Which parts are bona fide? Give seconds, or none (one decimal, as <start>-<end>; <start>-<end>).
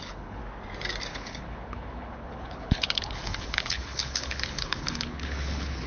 0.4-1.1